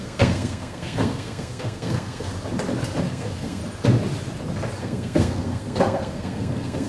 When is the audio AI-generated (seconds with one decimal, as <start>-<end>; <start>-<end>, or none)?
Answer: 0.0-2.3; 3.0-3.6; 4.8-6.9